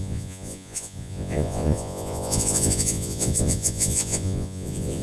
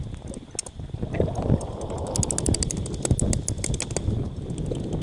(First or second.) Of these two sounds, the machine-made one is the first